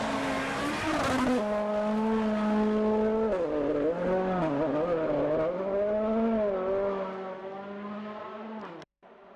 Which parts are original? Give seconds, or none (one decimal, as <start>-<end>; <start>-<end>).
0.0-9.4